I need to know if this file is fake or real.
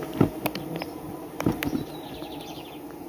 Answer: fake